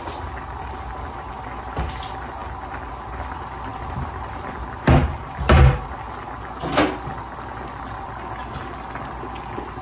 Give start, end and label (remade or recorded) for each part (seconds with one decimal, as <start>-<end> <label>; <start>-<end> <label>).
0.0-9.8 recorded